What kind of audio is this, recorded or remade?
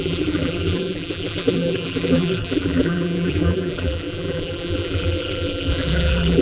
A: remade